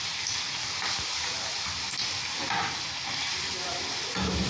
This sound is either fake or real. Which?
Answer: real